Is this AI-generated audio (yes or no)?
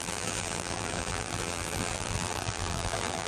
yes